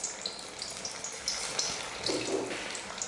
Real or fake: real